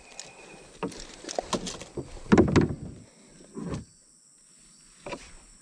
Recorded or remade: recorded